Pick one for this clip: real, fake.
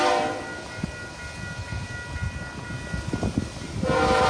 real